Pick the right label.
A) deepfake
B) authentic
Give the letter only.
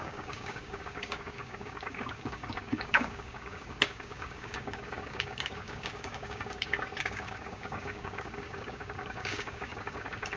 A